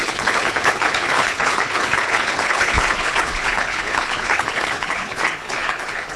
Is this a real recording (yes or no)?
no